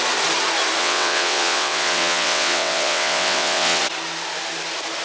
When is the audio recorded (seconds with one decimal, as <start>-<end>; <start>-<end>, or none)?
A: 0.0-0.8; 3.8-5.0

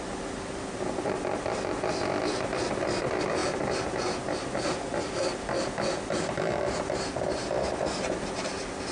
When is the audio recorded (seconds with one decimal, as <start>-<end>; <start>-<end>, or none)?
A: 0.0-8.9

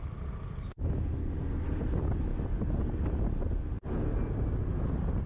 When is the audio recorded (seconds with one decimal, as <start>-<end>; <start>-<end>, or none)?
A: 0.0-5.3

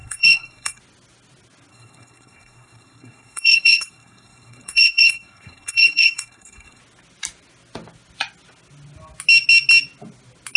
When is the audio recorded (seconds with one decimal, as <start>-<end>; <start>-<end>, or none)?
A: 0.8-1.7; 6.8-10.6

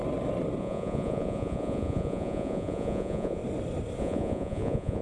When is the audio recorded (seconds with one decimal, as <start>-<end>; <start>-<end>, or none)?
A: 0.0-0.6; 3.4-4.0

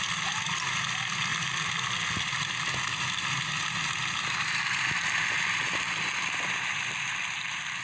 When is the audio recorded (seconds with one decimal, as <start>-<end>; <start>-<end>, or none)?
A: 0.0-7.8